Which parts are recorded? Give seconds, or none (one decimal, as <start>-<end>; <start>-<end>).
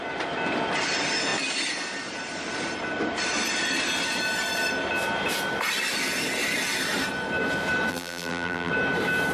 0.0-7.9; 8.7-9.3